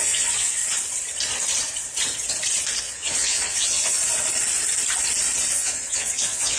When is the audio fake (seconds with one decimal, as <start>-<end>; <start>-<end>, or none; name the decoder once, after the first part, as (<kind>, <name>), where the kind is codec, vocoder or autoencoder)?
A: 0.0-0.6 (vocoder, Vocos); 2.8-4.0; 5.5-6.6

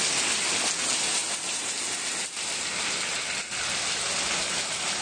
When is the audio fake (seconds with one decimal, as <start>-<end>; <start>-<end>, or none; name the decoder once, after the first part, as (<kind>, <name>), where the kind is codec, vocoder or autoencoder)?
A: none

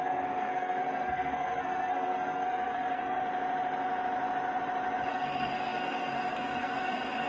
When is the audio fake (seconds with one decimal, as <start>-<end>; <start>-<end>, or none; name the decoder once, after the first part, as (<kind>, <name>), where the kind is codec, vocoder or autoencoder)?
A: 0.0-3.2 (codec, SNAC); 5.1-7.3

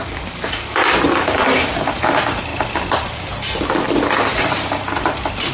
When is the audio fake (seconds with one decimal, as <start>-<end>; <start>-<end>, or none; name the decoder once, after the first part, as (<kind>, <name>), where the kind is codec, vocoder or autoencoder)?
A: none

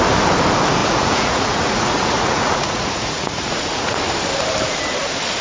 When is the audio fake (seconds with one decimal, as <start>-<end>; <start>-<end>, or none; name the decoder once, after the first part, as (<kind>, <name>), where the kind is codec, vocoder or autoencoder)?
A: 0.8-4.0 (vocoder, Vocos)

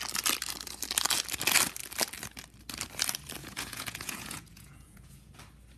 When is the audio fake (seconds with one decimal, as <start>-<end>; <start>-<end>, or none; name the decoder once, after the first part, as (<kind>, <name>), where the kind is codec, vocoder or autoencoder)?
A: 3.4-5.3 (vocoder, Vocos)

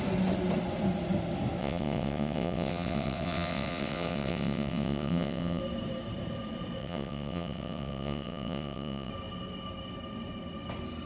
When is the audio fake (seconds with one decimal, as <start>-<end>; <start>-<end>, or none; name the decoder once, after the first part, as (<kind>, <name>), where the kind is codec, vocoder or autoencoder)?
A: 1.6-5.6 (vocoder, WaveNeXt); 6.8-9.1